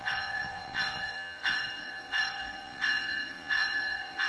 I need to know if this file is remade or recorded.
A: remade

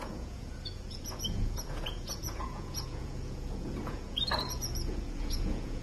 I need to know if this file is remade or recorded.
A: remade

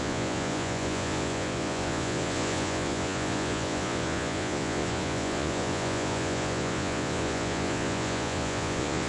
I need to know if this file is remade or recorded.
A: remade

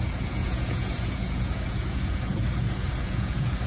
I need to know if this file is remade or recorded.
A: remade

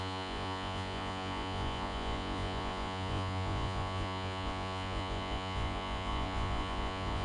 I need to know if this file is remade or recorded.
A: remade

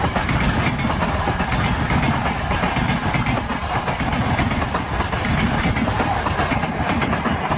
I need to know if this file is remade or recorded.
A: recorded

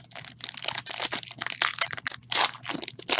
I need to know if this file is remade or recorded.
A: recorded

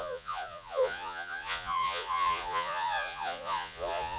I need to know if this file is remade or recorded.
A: remade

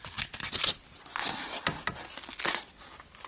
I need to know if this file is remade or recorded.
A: recorded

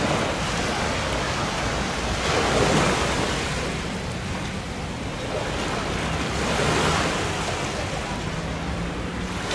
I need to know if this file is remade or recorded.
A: recorded